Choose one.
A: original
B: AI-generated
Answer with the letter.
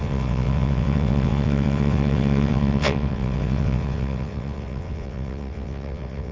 B